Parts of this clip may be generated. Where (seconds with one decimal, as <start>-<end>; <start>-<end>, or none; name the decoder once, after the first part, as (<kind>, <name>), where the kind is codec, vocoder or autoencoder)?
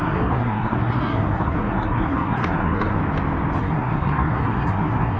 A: 0.0-3.0 (codec, SNAC); 3.6-5.2